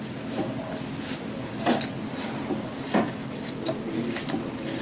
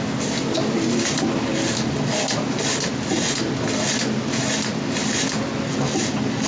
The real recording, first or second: second